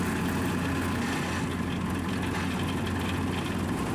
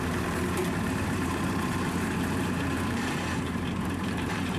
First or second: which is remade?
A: second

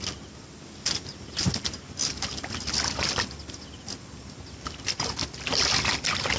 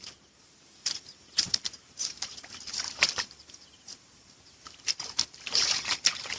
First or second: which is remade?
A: second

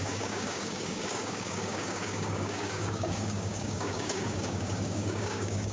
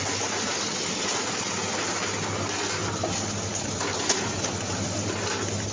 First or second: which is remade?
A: first